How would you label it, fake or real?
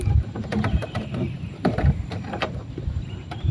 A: fake